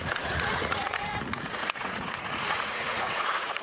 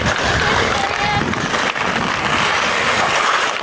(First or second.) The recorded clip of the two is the second